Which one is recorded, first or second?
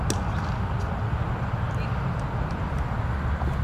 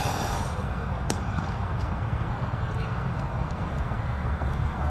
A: first